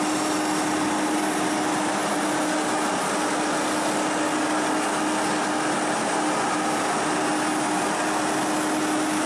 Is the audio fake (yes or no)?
no